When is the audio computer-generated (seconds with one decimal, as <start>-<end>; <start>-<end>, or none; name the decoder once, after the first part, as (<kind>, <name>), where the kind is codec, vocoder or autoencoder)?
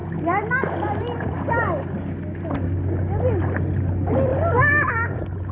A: none